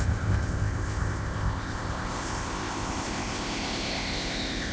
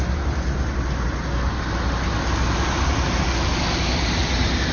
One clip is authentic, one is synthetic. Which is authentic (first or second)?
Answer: second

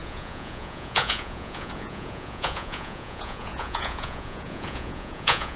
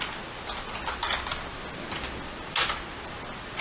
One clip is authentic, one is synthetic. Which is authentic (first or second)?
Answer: second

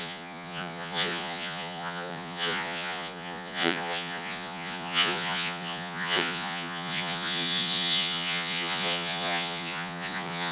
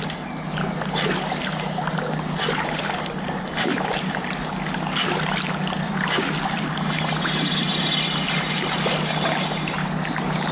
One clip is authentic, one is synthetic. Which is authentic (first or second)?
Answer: second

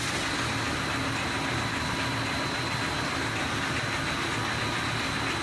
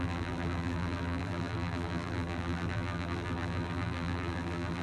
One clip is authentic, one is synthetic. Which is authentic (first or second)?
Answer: first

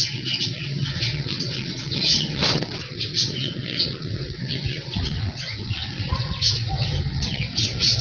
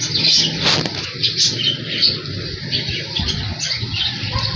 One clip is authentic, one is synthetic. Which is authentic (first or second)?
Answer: second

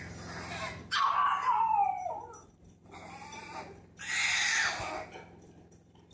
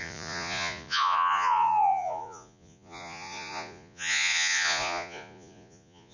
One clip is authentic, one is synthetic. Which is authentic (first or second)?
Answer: first